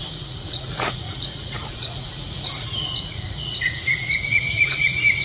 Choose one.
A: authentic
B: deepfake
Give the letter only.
B